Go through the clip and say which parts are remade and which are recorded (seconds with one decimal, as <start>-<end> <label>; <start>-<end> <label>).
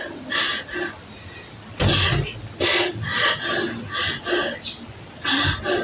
0.0-5.8 recorded